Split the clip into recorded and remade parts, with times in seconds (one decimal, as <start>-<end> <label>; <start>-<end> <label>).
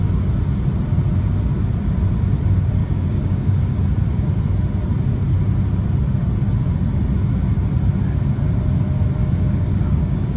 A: 0.0-2.8 recorded; 2.8-3.8 remade; 3.8-9.2 recorded; 9.2-10.4 remade